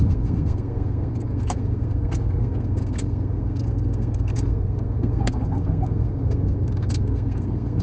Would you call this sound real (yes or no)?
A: no